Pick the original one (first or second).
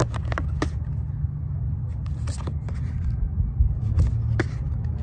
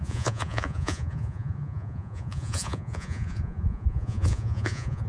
first